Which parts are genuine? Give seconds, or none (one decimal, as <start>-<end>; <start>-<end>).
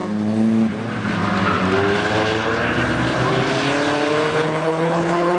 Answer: 0.0-4.3